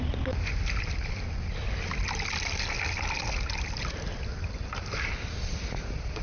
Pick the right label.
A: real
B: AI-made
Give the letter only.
A